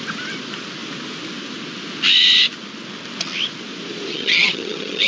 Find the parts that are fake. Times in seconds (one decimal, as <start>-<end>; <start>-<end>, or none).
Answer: 4.1-5.1